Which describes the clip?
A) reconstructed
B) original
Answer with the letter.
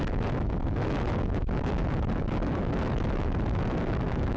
A